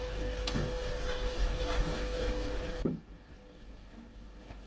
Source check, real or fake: fake